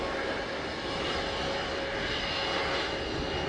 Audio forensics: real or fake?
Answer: real